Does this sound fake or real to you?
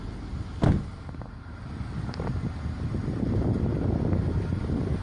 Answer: real